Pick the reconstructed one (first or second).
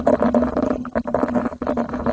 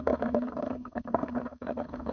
second